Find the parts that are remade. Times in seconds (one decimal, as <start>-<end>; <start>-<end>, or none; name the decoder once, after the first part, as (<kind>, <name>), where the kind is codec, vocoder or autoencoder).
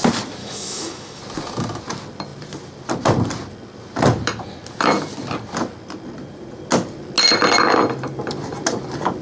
0.4-1.2 (autoencoder, DAC-VAE)